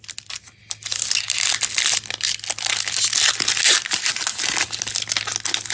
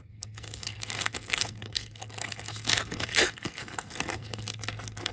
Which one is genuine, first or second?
first